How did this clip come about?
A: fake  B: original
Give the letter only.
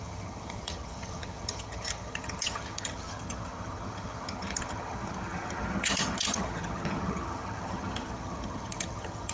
A